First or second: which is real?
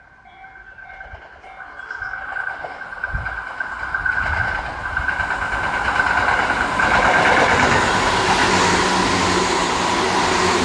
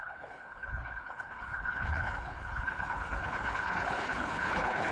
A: first